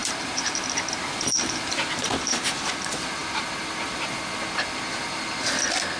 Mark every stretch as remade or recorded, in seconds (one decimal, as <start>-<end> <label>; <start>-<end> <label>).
0.0-2.7 remade; 2.7-6.0 recorded